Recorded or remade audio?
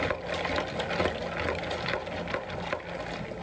recorded